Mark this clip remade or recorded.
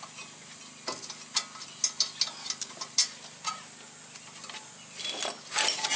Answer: recorded